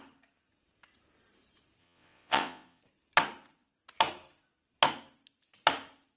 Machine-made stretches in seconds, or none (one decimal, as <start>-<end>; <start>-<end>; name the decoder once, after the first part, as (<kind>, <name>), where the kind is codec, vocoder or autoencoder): 1.8-2.8 (vocoder, WaveNeXt)